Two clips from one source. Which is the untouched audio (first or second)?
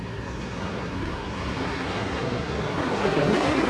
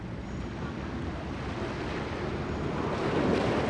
second